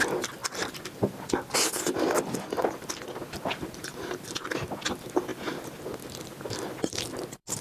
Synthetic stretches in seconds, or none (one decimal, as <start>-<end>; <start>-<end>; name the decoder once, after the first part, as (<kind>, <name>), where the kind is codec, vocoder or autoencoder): none